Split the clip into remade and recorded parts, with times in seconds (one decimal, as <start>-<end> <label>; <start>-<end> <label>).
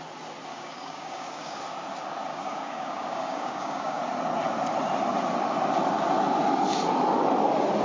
0.0-0.5 recorded; 0.5-1.6 remade; 1.6-2.3 recorded; 2.3-4.0 remade; 4.0-7.8 recorded